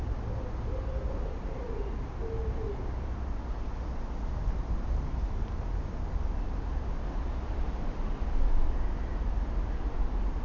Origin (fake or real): real